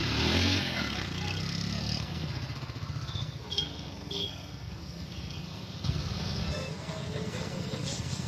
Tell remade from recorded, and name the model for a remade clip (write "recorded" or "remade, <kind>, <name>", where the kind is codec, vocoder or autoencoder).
remade, codec, SNAC